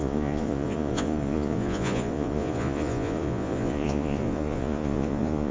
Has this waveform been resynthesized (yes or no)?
yes